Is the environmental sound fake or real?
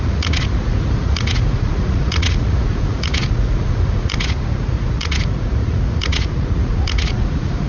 fake